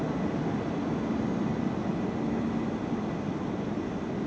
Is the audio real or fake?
real